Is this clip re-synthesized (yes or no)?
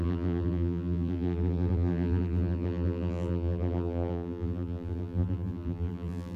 yes